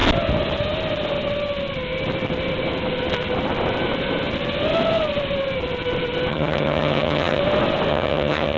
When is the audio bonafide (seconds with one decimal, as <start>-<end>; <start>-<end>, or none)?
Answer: 0.0-6.3; 7.4-7.9